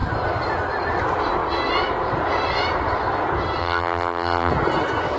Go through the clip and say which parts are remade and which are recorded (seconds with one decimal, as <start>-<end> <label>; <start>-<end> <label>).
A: 0.0-3.6 recorded; 3.6-4.5 remade; 4.5-5.2 recorded